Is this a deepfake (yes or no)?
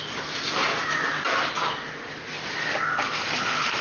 no